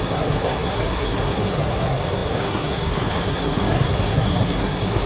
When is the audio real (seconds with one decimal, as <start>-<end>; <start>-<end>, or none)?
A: none